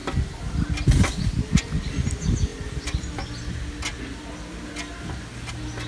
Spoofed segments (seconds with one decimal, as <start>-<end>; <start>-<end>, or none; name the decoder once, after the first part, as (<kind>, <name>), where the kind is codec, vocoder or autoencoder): none